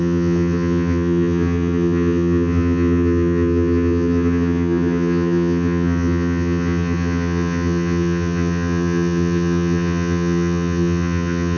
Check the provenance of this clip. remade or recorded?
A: remade